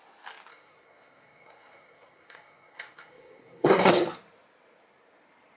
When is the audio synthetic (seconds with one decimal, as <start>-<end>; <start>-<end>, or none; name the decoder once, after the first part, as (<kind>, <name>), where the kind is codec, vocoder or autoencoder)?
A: 0.5-3.9 (codec, SNAC)